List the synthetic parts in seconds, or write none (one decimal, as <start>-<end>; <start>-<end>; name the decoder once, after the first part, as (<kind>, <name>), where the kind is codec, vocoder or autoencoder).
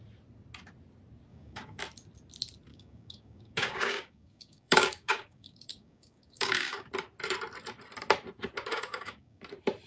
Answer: 1.3-1.8 (codec, DAC); 2.7-6.9; 8.7-9.4